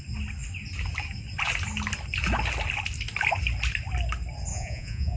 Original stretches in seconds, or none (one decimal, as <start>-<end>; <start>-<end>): 0.0-4.5